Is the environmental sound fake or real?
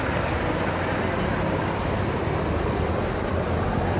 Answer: fake